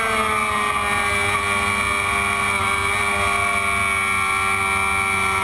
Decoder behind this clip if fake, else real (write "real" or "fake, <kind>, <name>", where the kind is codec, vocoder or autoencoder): real